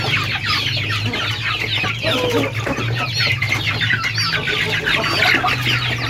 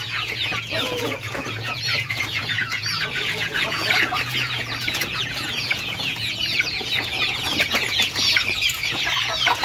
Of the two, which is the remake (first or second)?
second